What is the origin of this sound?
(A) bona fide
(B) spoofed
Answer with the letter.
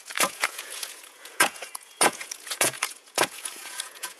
B